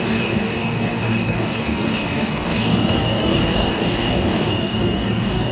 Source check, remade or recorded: remade